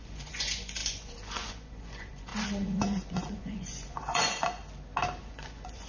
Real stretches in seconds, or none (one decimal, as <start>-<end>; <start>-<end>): 4.6-5.2